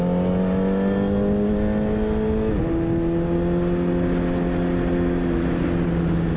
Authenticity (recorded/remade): recorded